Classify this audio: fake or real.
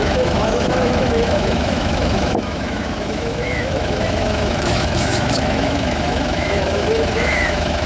fake